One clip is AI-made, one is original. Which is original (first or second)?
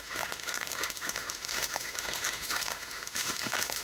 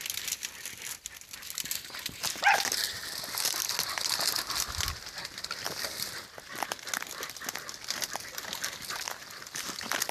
second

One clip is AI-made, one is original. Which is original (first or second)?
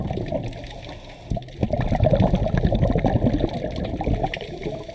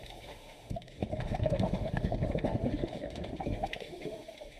first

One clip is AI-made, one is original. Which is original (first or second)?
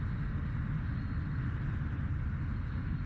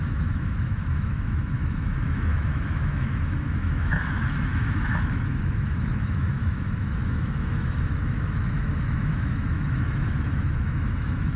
first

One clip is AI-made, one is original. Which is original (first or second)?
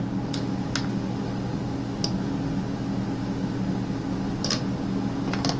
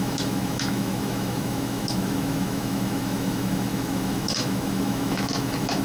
first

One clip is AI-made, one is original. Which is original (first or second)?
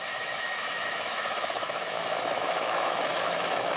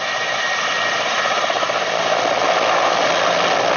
second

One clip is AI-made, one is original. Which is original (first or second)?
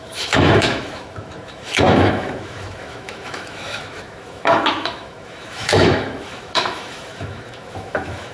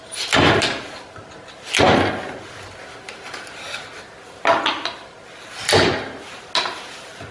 second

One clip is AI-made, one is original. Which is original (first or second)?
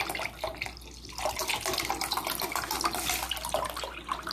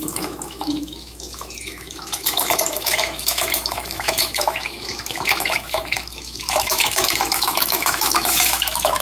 first